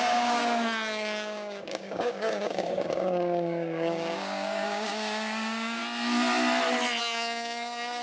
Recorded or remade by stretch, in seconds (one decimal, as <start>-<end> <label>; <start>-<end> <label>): 0.0-5.8 remade; 5.8-7.0 recorded; 7.0-8.0 remade